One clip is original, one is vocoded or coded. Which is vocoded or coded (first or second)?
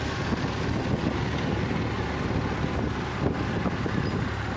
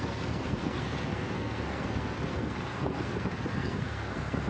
second